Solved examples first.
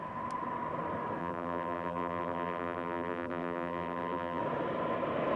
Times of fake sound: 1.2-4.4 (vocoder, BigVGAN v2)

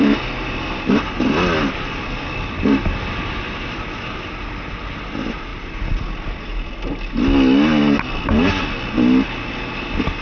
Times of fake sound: 5.5-6.0 (vocoder, BigVGAN v2)